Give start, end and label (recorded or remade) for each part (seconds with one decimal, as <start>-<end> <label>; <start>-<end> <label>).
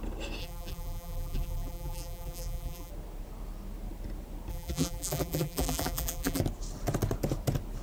0.0-0.4 recorded; 0.4-2.9 remade; 2.9-4.5 recorded; 4.5-6.4 remade; 6.4-7.8 recorded